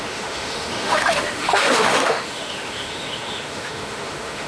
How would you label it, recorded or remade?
remade